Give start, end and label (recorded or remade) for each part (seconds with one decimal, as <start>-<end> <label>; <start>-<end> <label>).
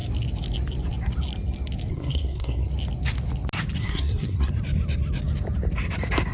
0.0-1.9 recorded; 1.9-2.7 remade; 2.7-3.8 recorded; 3.8-4.5 remade; 4.5-6.3 recorded